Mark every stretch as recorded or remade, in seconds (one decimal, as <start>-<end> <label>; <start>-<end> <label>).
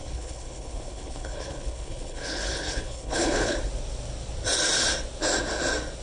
0.0-3.6 remade; 3.6-6.0 recorded